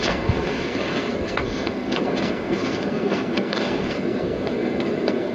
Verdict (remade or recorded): remade